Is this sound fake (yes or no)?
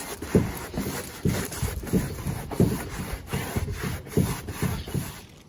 no